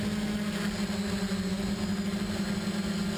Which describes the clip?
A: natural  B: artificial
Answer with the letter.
A